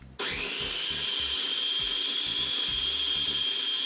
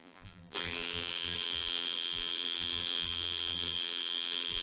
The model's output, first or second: second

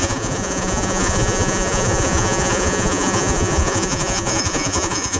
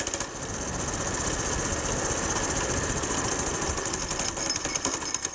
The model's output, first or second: first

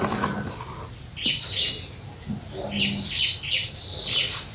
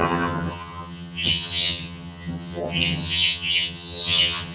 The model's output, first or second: second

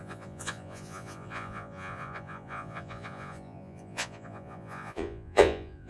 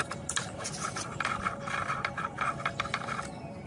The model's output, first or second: first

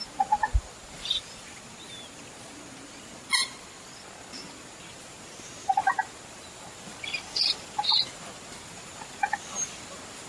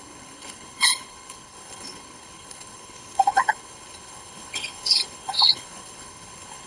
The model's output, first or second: second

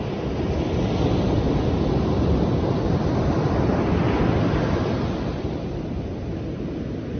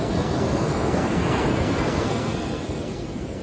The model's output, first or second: second